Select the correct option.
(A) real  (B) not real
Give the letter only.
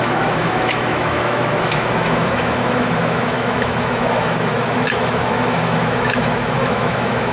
B